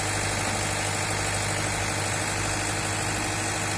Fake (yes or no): no